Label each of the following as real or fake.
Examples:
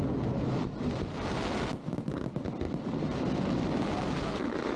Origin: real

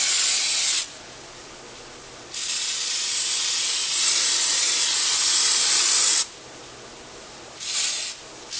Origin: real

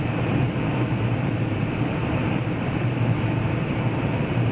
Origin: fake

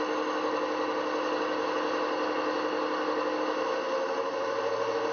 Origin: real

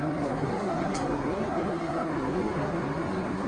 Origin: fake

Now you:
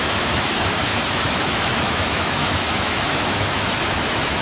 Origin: fake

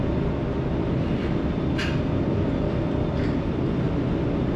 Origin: real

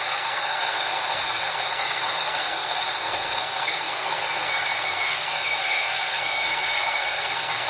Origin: fake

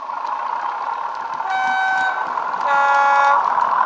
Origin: real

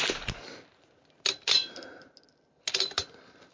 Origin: real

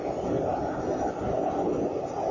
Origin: real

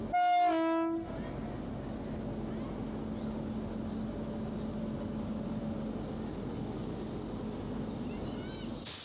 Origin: real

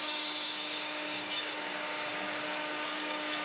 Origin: fake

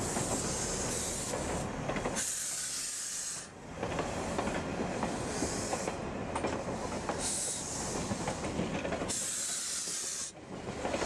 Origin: real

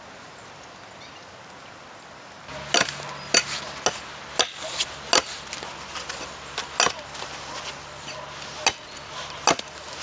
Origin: real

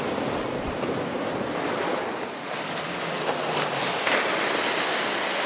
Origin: real